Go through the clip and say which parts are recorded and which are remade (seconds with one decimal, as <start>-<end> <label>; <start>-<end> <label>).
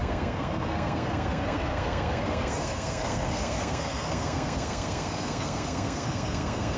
0.0-6.8 remade